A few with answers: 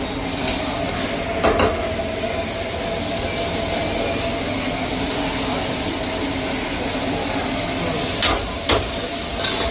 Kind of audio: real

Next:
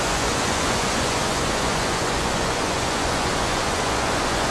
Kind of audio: fake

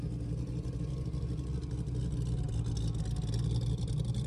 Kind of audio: real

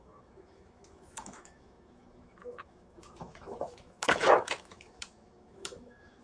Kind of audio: fake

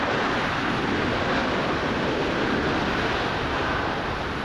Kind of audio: real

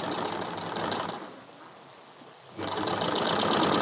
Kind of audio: real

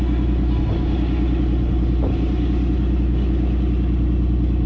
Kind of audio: real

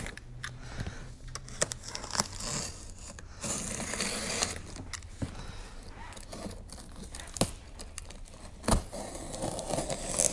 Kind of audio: real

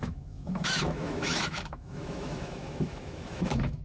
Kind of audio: fake